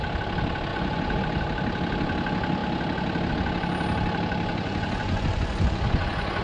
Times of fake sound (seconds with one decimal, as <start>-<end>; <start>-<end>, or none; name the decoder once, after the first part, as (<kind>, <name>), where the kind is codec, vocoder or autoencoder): 0.7-1.2 (vocoder, Vocos); 4.5-6.4